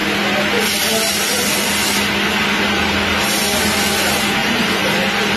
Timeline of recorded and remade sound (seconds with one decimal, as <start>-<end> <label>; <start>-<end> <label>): 0.0-4.4 recorded; 4.4-4.9 remade; 4.9-5.4 recorded